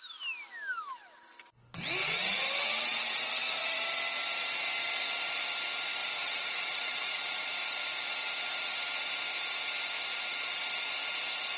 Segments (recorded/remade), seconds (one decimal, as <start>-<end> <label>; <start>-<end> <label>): 0.0-2.0 recorded; 2.0-3.8 remade; 3.8-6.0 recorded; 6.0-7.2 remade; 7.2-11.6 recorded